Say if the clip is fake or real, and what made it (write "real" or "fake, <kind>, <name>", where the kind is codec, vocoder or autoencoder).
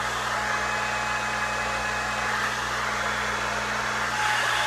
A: real